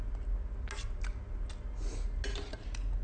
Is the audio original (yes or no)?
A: yes